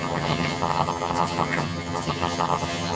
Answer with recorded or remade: remade